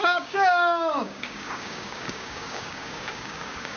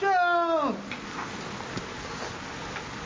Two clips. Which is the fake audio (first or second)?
first